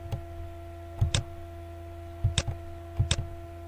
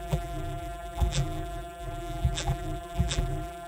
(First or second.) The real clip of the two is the first